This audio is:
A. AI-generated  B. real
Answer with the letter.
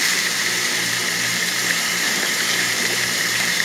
A